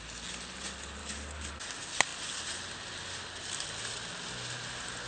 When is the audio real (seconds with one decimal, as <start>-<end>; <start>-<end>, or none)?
0.0-1.0; 1.5-5.1